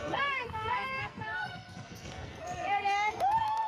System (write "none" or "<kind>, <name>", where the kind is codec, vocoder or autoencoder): codec, SNAC